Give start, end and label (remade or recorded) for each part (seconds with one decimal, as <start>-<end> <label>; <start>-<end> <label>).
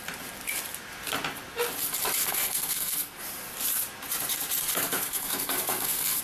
0.0-2.2 recorded; 2.2-3.2 remade; 3.2-4.7 recorded; 4.7-6.2 remade